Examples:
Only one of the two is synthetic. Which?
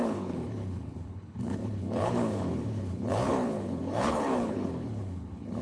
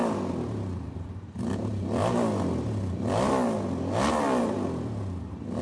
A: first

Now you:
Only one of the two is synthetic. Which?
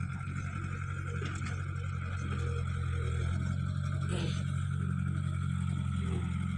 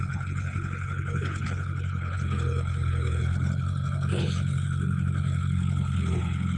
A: second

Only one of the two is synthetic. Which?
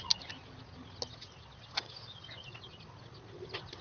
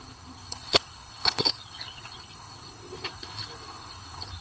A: second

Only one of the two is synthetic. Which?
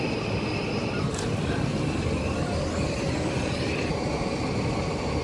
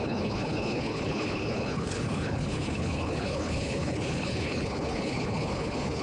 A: second